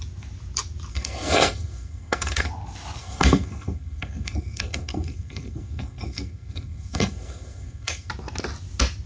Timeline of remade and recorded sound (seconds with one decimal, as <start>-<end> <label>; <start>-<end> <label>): 0.0-0.9 recorded; 0.9-2.5 remade; 2.5-3.0 recorded; 3.0-8.1 remade; 8.1-9.1 recorded